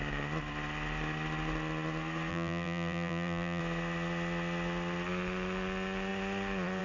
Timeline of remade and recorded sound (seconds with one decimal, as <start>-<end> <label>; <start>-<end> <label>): 0.0-2.3 recorded; 2.3-3.6 remade; 3.6-6.8 recorded